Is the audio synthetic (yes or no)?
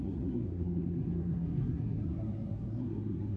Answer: yes